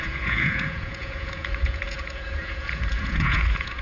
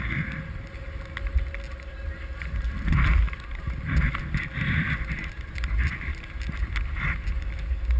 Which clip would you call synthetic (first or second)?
first